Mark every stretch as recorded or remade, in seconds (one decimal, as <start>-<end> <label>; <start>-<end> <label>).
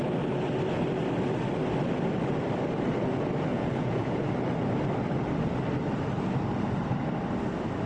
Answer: 0.0-3.5 recorded; 3.5-4.3 remade; 4.3-7.9 recorded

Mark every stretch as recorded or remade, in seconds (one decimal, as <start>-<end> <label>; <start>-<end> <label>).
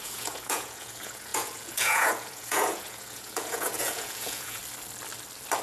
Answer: 0.0-4.6 remade; 4.6-5.6 recorded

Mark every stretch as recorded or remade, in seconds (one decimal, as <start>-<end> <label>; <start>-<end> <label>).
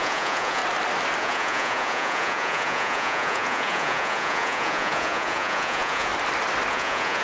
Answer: 0.0-0.6 remade; 0.6-1.2 recorded; 1.2-6.1 remade; 6.1-6.7 recorded; 6.7-7.2 remade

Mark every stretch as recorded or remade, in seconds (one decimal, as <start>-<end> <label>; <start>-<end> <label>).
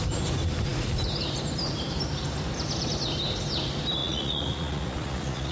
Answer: 0.0-4.0 recorded; 4.0-5.5 remade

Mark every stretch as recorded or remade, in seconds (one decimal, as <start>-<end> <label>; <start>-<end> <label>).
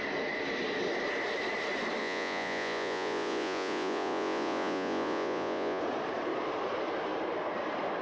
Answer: 0.0-2.0 recorded; 2.0-5.8 remade; 5.8-8.0 recorded